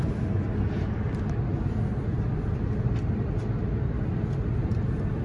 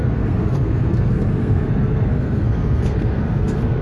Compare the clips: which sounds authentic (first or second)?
first